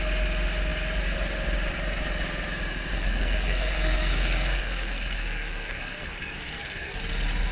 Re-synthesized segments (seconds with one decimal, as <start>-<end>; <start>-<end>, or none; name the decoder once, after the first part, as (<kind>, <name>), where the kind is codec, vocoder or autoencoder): 2.9-7.0 (codec, SNAC)